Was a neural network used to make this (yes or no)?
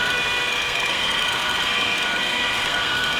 yes